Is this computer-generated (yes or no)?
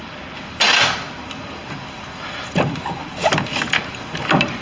no